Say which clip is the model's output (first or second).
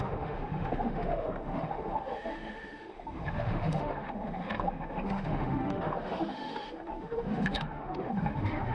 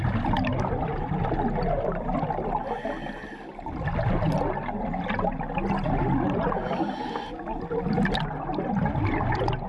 first